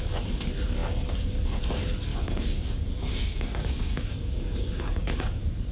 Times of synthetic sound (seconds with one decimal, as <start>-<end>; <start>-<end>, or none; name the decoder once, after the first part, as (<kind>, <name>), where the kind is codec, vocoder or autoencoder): 2.1-5.1 (codec, DAC)